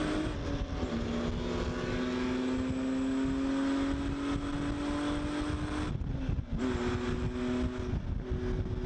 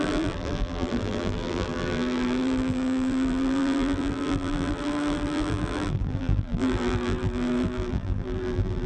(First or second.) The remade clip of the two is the second